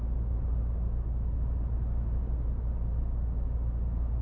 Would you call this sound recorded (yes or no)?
yes